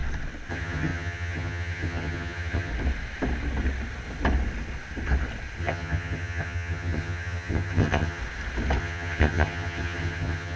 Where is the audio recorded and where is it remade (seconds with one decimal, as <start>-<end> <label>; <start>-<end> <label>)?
0.0-0.5 recorded; 0.5-2.7 remade; 2.7-5.6 recorded; 5.6-8.2 remade; 8.2-8.8 recorded; 8.8-10.6 remade